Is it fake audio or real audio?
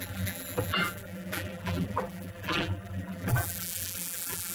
fake